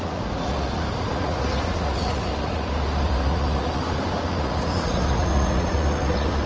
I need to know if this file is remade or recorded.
remade